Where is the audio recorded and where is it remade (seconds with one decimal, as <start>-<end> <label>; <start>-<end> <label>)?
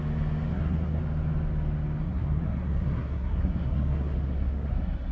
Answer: 0.0-0.5 recorded; 0.5-1.0 remade; 1.0-2.0 recorded; 2.0-5.1 remade